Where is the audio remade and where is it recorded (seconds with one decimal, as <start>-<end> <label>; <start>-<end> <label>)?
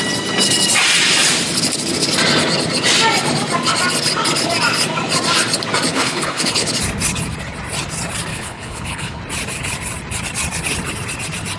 0.0-5.9 recorded; 5.9-6.7 remade; 6.7-8.3 recorded; 8.3-9.2 remade; 9.2-11.6 recorded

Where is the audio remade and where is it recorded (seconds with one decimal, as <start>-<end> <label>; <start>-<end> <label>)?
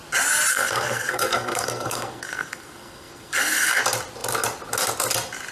0.0-0.5 recorded; 0.5-3.8 remade; 3.8-5.5 recorded